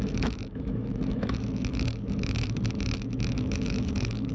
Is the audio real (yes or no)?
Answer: no